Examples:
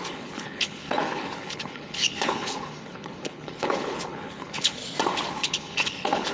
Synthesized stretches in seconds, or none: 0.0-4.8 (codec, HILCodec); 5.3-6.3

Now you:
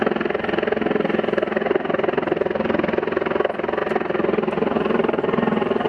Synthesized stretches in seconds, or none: none

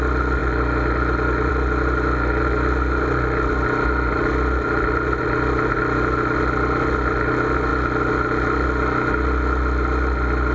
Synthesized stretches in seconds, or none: none

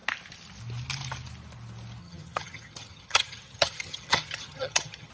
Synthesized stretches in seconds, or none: 2.0-5.1 (vocoder, HiFi-GAN)

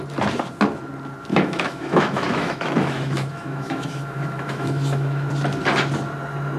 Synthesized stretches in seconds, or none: 1.3-5.3 (autoencoder, DAC-VAE)

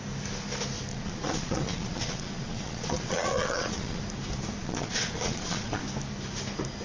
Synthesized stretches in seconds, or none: 0.9-4.0 (vocoder, Vocos); 4.6-5.8

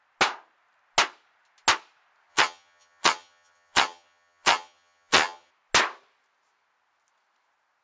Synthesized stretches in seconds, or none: 2.3-5.5 (vocoder, HiFi-GAN)